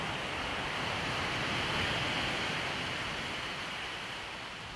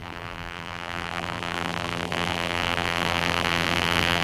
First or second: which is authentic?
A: first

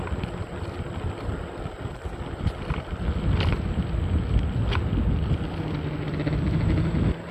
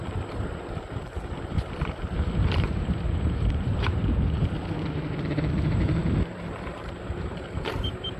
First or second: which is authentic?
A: first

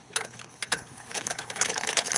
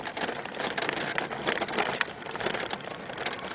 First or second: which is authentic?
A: second